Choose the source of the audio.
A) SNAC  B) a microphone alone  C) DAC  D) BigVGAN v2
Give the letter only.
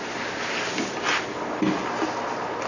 B